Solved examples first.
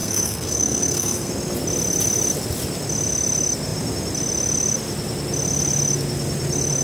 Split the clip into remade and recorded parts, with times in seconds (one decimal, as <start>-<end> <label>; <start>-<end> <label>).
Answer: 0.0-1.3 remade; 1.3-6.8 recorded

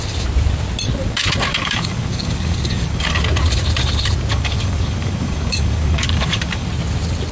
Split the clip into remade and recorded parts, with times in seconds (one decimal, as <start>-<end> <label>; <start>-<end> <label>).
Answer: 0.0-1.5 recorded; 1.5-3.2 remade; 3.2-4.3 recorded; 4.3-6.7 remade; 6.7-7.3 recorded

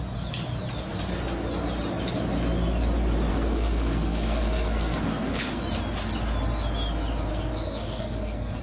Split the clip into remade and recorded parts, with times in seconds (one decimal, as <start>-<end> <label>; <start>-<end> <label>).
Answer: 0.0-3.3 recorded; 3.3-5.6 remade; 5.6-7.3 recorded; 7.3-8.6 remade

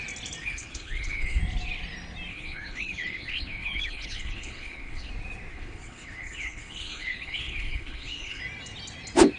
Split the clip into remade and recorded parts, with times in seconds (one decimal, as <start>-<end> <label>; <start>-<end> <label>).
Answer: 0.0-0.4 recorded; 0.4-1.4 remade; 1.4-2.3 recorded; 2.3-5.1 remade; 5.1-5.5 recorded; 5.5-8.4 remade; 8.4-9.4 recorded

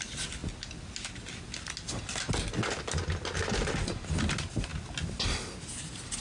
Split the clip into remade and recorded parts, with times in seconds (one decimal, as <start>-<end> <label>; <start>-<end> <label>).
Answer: 0.0-6.2 recorded

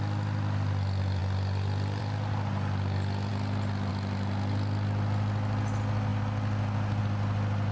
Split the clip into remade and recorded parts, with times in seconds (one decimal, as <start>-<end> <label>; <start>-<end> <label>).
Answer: 0.0-7.7 recorded

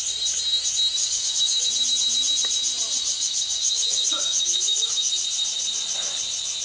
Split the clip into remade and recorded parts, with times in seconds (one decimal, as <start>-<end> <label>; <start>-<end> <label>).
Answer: 0.0-1.0 recorded; 1.0-1.7 remade; 1.7-3.1 recorded; 3.1-5.1 remade; 5.1-6.6 recorded

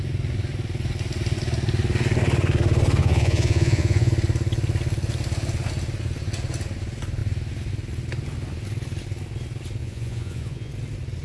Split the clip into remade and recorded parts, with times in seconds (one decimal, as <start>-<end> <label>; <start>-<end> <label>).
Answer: 0.0-3.0 recorded; 3.0-4.1 remade; 4.1-9.8 recorded; 9.8-10.7 remade; 10.7-11.2 recorded